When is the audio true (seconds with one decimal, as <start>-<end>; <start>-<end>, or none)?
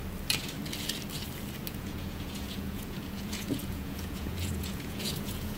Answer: 0.0-1.7